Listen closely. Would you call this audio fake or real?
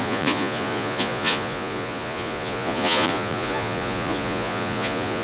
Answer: fake